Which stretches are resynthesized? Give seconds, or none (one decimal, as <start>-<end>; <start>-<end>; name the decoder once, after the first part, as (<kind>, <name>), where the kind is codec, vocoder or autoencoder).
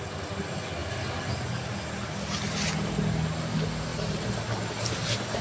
none